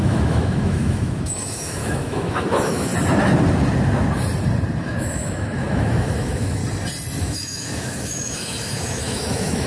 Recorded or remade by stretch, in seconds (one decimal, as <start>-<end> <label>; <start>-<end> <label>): 0.0-2.9 remade; 2.9-4.8 recorded; 4.8-6.6 remade; 6.6-7.2 recorded; 7.2-9.7 remade